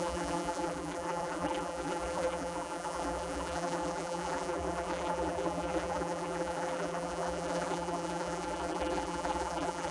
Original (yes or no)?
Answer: no